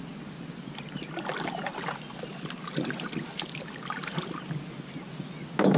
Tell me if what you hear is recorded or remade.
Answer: recorded